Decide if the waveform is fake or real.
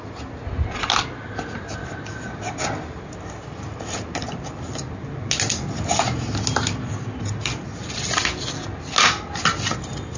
real